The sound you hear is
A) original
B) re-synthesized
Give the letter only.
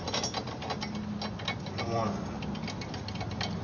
A